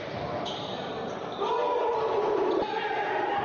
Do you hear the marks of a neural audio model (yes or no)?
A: no